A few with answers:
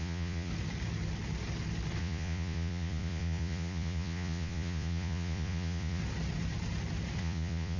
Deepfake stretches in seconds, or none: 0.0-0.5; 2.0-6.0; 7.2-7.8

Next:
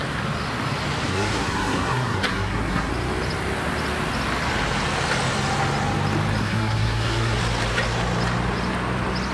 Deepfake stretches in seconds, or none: 1.1-2.9; 6.4-7.4

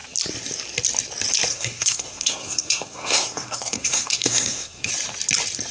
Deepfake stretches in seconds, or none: 1.5-4.9

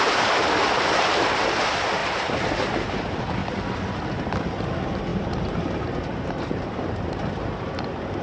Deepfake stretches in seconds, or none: 0.0-3.4; 4.3-8.2